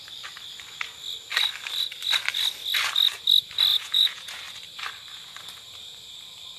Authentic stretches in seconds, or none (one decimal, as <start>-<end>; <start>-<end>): 0.0-3.7; 4.4-6.6